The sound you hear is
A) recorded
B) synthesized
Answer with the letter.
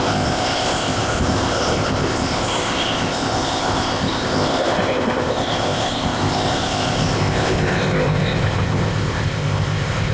B